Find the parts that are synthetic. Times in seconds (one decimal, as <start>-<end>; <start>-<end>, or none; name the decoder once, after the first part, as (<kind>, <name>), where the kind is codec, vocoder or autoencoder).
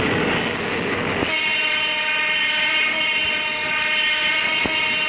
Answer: none